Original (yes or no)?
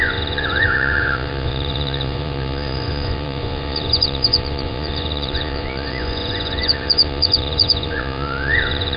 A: no